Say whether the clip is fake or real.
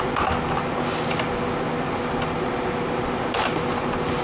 real